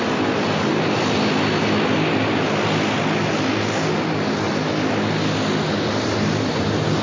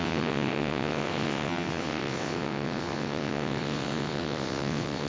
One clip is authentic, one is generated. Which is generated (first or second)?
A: second